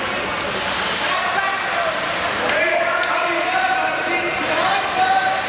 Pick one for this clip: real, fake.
real